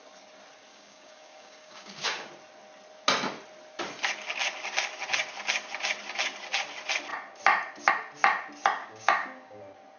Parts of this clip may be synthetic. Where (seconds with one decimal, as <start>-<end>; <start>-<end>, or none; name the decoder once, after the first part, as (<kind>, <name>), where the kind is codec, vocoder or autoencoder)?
0.7-2.3 (codec, DAC); 8.8-9.6